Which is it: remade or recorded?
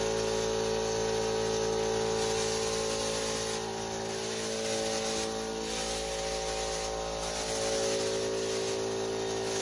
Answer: recorded